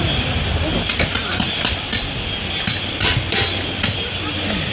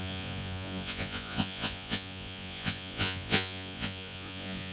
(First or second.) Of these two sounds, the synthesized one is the second